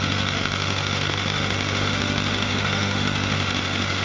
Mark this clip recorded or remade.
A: remade